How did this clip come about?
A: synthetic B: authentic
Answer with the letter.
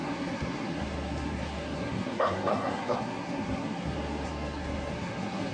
A